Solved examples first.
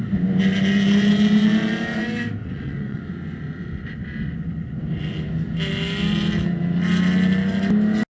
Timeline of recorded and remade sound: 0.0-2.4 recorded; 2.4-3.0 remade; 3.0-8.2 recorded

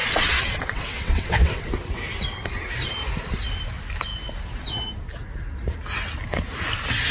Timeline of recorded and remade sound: 0.0-1.7 remade; 1.7-7.1 recorded

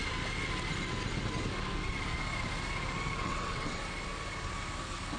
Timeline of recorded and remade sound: 0.0-3.2 recorded; 3.2-3.8 remade; 3.8-5.2 recorded

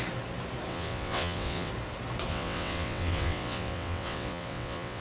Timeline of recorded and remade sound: 0.0-0.7 recorded; 0.7-1.7 remade; 1.7-2.3 recorded; 2.3-5.0 remade

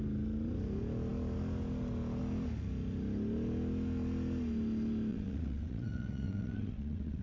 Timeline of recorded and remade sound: 0.0-5.1 recorded; 5.1-7.2 remade